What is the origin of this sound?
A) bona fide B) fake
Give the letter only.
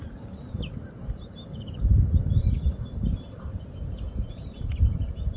B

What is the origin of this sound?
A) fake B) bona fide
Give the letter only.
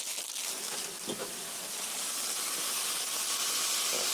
B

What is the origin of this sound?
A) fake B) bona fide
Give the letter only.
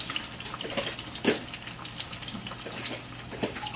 B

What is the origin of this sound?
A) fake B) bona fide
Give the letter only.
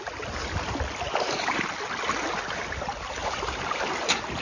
B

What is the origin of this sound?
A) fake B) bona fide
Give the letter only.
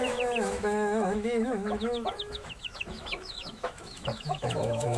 A